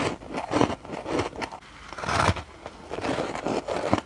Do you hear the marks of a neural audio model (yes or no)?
no